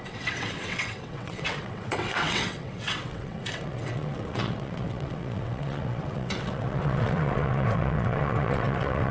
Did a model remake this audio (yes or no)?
yes